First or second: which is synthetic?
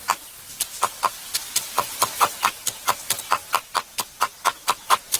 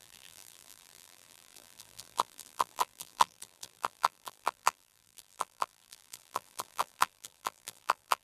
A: second